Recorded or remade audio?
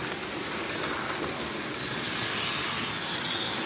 recorded